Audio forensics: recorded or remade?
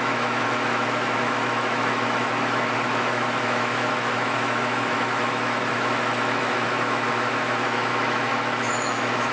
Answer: remade